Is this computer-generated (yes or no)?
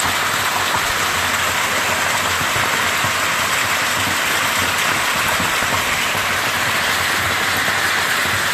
no